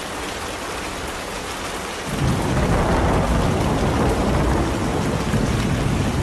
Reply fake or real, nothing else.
real